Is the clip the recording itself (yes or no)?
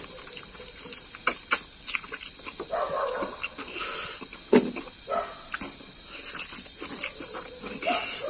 yes